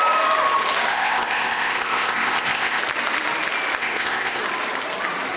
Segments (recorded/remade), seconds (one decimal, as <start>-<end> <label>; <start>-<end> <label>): 0.0-0.9 recorded; 0.9-2.8 remade; 2.8-3.8 recorded; 3.8-4.4 remade; 4.4-5.4 recorded